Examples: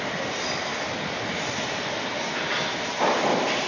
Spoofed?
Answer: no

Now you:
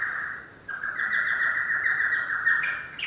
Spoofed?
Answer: no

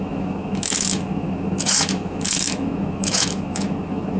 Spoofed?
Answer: yes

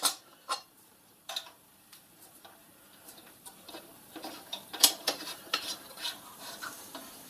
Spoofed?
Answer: yes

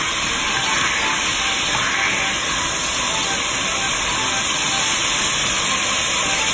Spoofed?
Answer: no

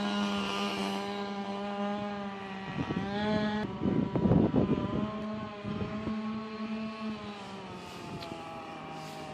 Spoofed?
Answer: no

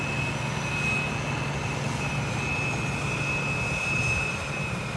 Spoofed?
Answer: no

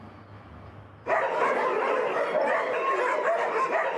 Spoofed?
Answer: no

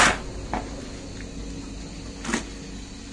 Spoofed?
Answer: no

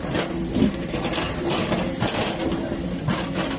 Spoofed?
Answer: no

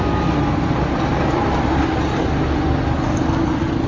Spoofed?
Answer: no